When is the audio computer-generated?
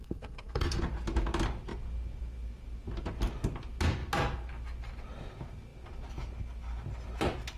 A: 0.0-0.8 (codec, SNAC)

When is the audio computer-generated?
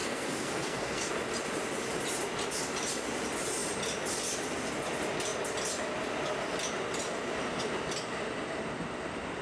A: 0.0-1.1 (codec, SNAC)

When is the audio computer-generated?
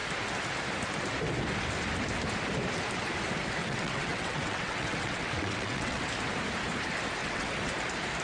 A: 3.6-6.0 (vocoder, WaveNeXt); 7.2-7.7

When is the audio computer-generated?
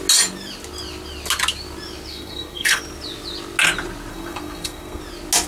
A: 2.1-2.8 (codec, SNAC); 4.1-5.0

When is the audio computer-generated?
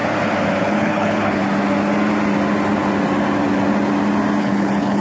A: 0.6-1.4 (codec, HILCodec); 4.4-5.0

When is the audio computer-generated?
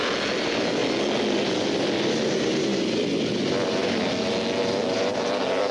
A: none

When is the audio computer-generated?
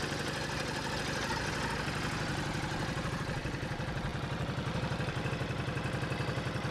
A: none